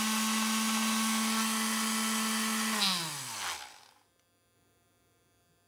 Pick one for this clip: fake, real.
real